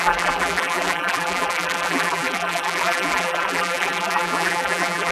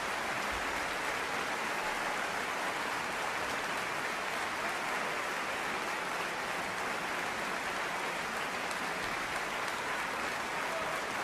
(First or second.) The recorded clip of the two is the second